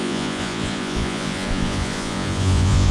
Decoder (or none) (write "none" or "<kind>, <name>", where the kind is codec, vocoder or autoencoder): vocoder, Vocos